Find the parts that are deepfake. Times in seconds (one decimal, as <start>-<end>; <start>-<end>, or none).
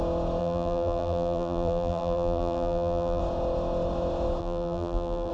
0.4-3.2; 4.4-5.3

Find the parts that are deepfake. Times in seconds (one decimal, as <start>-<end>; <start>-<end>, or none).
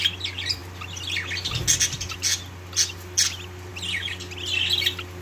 none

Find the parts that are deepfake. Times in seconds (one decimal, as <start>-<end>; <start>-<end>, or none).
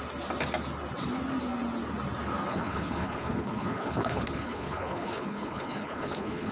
2.5-6.5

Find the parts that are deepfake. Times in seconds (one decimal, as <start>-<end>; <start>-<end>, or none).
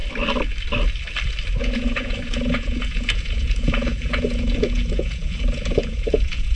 1.6-6.6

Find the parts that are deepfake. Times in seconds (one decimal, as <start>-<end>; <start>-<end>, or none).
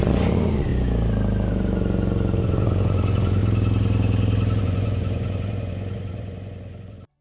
0.0-0.7; 2.4-3.4; 4.6-7.2